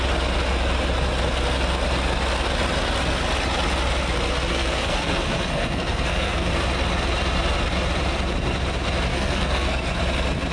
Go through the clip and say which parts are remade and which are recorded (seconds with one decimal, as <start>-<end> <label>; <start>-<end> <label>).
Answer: 0.0-4.5 recorded; 4.5-6.6 remade; 6.6-9.1 recorded; 9.1-9.9 remade; 9.9-10.5 recorded